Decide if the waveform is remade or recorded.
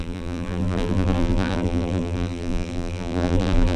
remade